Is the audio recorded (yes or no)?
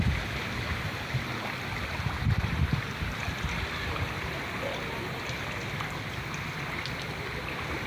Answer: yes